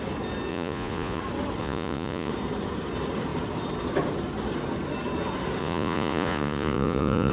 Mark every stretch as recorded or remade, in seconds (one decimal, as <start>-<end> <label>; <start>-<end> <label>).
0.0-0.5 recorded; 0.5-1.2 remade; 1.2-1.6 recorded; 1.6-2.3 remade; 2.3-5.6 recorded; 5.6-7.3 remade